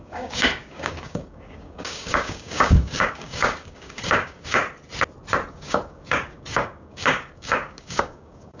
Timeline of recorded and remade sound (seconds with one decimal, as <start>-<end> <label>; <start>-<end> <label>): 0.0-4.6 remade; 4.6-5.5 recorded; 5.5-8.6 remade